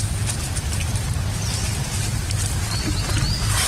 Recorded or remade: recorded